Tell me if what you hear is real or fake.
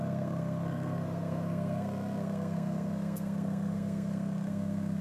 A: fake